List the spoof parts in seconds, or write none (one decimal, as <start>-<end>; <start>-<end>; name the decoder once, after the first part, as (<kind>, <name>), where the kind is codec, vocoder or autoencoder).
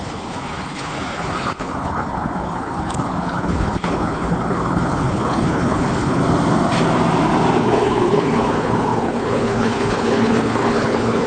0.0-6.2 (codec, HILCodec); 7.6-11.3